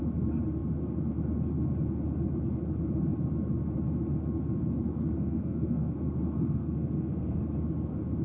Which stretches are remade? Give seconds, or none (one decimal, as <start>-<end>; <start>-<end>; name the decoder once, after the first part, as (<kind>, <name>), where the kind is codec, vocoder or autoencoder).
5.0-7.4 (codec, SNAC)